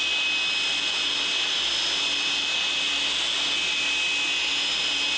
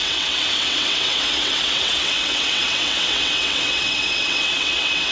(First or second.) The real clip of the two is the first